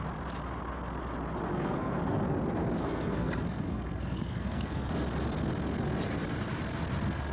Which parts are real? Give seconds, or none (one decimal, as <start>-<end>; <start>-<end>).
0.0-1.5; 2.0-2.8; 4.9-7.3